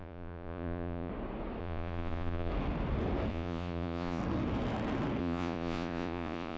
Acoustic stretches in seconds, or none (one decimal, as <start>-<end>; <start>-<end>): 1.1-1.6; 2.5-3.3; 4.2-5.2

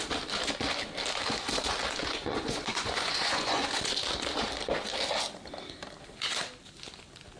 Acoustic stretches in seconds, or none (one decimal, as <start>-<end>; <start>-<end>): 0.0-2.0; 4.0-7.4

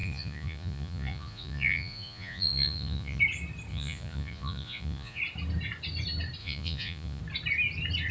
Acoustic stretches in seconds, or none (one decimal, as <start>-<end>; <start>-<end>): 3.2-3.7; 5.2-6.4; 7.2-8.1

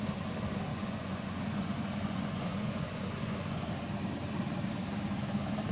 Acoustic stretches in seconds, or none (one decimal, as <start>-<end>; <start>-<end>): 0.0-0.7; 3.7-5.7

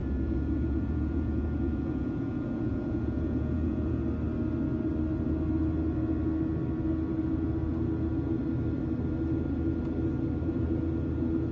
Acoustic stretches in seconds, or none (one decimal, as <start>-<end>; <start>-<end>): 4.0-11.5